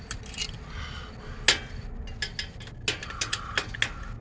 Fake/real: real